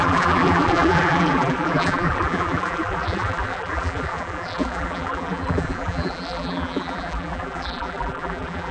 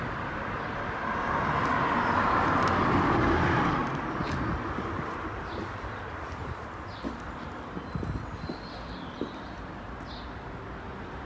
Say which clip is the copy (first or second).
first